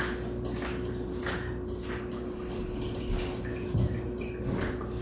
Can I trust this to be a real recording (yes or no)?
yes